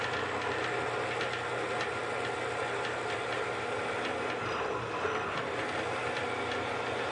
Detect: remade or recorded recorded